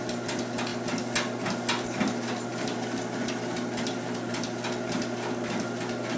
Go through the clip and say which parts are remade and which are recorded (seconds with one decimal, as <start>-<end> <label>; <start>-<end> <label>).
0.0-6.2 recorded